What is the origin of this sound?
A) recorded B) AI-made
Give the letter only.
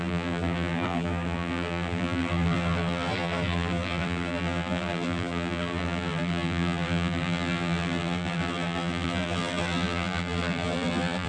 B